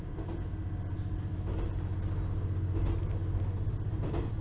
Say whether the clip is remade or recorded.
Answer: recorded